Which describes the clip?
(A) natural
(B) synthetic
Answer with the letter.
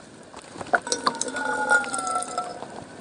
A